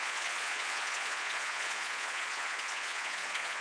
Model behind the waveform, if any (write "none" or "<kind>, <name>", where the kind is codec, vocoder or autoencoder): vocoder, Vocos